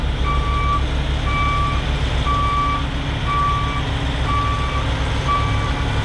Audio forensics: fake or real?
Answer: real